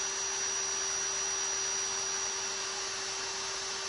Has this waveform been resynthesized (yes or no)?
no